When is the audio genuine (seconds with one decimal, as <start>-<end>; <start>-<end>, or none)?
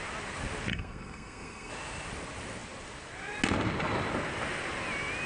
0.0-0.7; 1.7-5.3